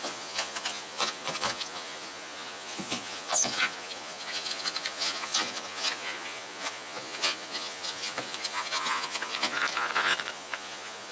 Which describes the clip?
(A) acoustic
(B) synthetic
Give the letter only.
B